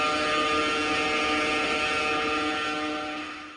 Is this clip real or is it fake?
real